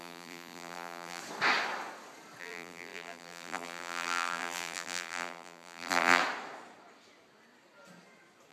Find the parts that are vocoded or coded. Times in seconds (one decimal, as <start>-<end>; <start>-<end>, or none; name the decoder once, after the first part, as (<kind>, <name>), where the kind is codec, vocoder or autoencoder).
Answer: 0.0-1.2 (vocoder, BigVGAN v2); 2.4-6.2